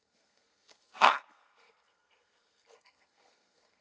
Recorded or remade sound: remade